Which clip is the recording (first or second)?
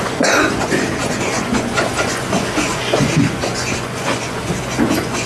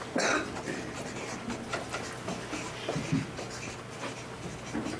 second